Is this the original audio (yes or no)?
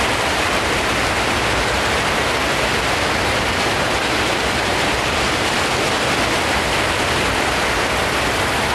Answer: yes